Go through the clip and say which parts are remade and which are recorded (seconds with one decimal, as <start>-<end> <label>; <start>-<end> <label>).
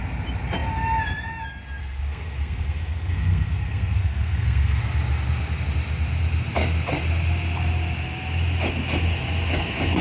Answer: 0.0-1.8 recorded; 1.8-4.8 remade; 4.8-10.0 recorded